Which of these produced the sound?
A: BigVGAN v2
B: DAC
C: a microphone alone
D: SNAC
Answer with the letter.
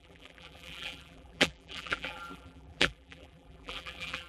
A